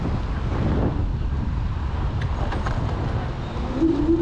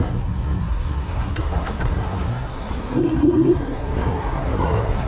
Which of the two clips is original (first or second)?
first